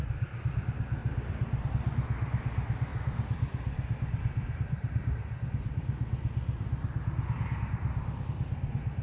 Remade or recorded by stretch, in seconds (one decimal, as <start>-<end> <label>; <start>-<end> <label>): 0.0-1.0 recorded; 1.0-1.7 remade; 1.7-2.9 recorded; 2.9-8.2 remade; 8.2-9.0 recorded